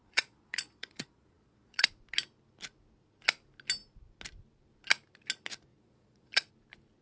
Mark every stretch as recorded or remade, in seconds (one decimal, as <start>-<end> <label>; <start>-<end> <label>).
0.0-2.0 remade; 2.0-5.7 recorded; 5.7-6.5 remade; 6.5-7.0 recorded